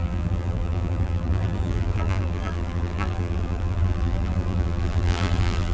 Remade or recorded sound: remade